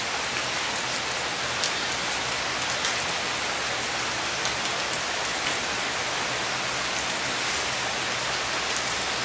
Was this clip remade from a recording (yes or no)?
no